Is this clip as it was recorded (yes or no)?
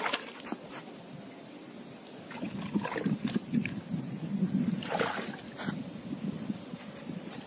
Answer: yes